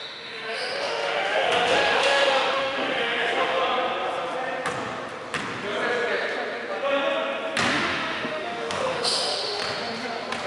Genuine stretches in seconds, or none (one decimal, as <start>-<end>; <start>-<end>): 3.6-7.7; 9.6-10.5